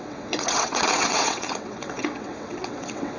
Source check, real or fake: fake